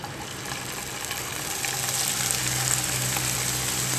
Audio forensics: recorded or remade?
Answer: recorded